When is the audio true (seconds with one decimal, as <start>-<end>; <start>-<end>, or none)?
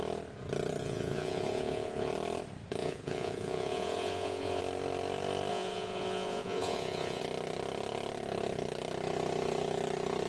0.0-0.8; 2.1-2.8; 4.6-5.5; 7.2-10.3